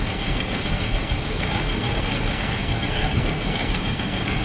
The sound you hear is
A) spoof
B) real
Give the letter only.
A